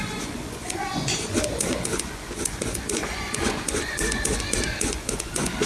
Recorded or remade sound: remade